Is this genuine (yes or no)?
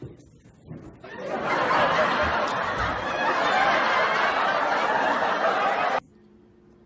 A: yes